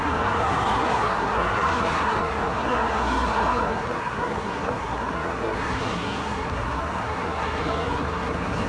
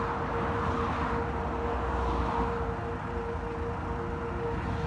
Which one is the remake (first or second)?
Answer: first